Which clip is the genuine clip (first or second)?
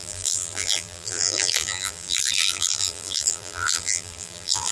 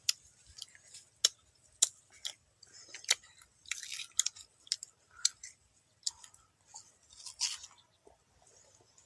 second